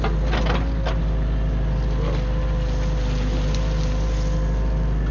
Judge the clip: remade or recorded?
recorded